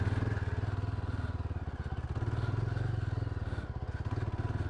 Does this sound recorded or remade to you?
recorded